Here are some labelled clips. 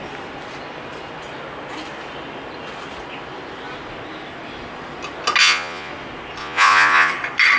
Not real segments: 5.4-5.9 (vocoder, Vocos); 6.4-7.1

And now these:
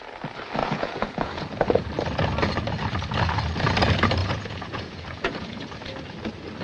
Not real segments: 0.6-1.9 (vocoder, Vocos); 4.2-5.7

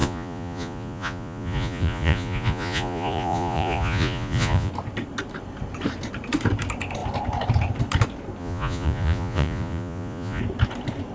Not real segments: 0.0-4.7 (vocoder, Vocos); 8.4-10.4

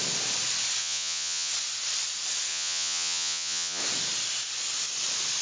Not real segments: 0.8-1.5 (vocoder, Vocos); 2.5-3.8

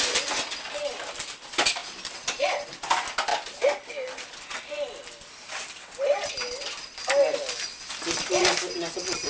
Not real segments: none

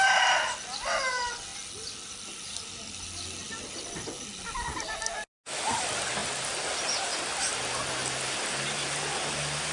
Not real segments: none

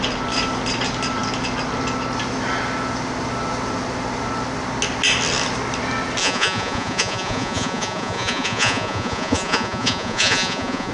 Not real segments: 6.2-10.9 (vocoder, Vocos)

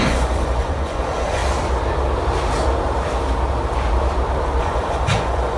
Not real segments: 0.0-1.4 (vocoder, Vocos); 4.6-5.6